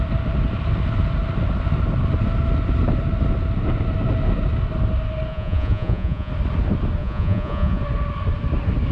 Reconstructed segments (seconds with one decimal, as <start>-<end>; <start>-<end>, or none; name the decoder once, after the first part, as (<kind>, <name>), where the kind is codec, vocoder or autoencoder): 5.3-6.3 (vocoder, Vocos); 7.0-7.8

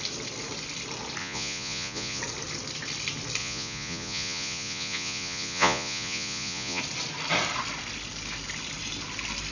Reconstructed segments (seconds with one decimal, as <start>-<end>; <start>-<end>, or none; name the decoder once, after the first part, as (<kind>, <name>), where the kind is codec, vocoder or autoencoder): 1.2-2.2 (vocoder, Vocos); 3.4-6.8

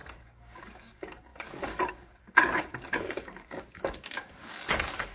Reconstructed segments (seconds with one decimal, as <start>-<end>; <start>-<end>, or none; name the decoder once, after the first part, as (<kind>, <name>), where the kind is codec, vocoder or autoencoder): 0.0-5.1 (codec, DAC)

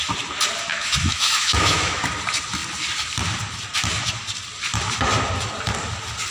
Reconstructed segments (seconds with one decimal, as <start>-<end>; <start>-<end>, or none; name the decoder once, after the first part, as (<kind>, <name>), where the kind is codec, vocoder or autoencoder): 0.7-2.2 (autoencoder, DAC-VAE)

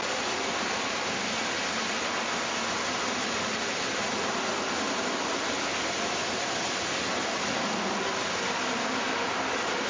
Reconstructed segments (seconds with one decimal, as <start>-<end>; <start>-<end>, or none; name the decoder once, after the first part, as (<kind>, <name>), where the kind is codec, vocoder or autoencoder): none

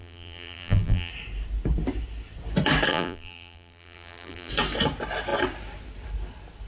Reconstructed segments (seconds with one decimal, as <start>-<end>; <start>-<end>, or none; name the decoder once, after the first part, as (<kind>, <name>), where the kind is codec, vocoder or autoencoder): 0.0-1.1 (vocoder, BigVGAN v2); 2.9-4.5

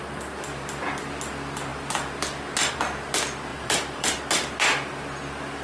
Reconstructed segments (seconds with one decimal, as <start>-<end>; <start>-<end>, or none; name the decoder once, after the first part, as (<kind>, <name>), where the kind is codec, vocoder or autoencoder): 3.5-4.2 (vocoder, BigVGAN v2)